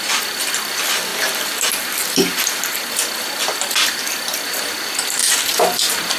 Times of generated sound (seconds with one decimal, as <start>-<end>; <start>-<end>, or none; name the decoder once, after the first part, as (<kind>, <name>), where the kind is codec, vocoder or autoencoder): none